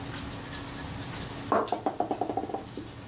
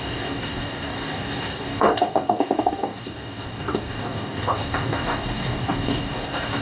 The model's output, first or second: second